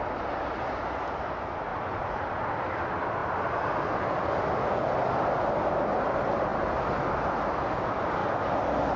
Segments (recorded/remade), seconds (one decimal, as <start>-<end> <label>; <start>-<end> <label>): 0.0-9.0 recorded